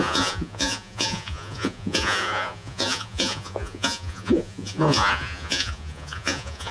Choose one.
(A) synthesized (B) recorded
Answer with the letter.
A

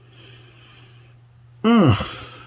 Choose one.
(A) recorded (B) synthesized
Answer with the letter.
A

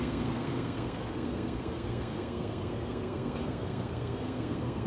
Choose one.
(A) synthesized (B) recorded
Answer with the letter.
A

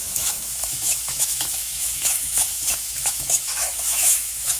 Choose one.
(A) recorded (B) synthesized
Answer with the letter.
B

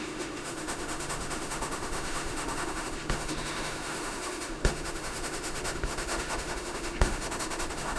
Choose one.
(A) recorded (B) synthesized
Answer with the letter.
B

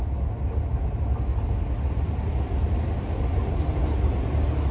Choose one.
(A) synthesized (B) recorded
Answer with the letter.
B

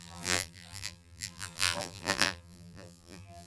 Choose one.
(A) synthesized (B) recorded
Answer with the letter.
A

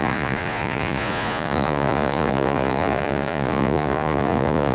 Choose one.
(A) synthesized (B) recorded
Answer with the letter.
A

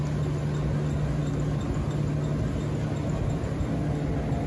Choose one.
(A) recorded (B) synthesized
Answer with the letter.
A